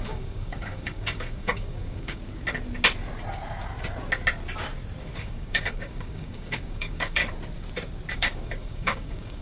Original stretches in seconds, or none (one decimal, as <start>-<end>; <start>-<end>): 2.2-5.0; 7.2-8.1

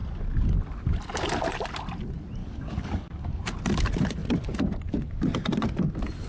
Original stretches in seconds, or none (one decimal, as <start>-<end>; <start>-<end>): 0.0-2.4; 3.4-6.3

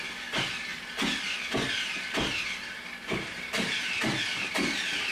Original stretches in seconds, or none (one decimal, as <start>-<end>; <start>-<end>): 0.0-5.1

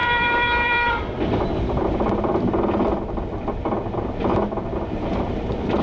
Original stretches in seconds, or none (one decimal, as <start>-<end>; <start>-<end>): 1.8-5.8

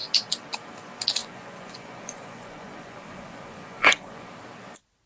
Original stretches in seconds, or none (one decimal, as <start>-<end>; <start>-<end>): 0.0-1.2; 4.3-5.1

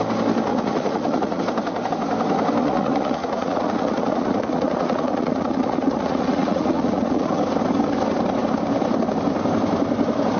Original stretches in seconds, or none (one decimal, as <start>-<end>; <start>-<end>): 0.0-0.5; 1.4-2.6; 7.4-10.4

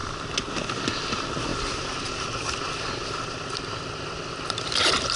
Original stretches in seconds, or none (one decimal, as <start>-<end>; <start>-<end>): 0.0-5.2